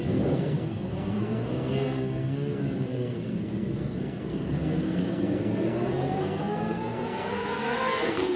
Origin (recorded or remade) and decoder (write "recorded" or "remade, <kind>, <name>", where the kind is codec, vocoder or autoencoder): remade, codec, SNAC